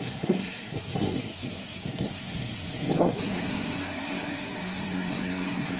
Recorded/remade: remade